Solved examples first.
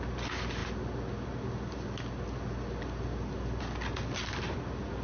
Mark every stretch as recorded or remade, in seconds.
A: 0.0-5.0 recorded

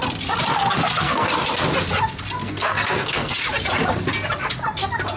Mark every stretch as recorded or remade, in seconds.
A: 0.0-0.5 recorded; 0.5-1.3 remade; 1.3-2.4 recorded; 2.4-3.3 remade; 3.3-5.2 recorded

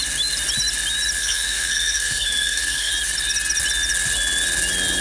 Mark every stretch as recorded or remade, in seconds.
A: 0.0-1.2 recorded; 1.2-2.9 remade; 2.9-5.0 recorded